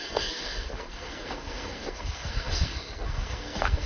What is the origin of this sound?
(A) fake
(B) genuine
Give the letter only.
A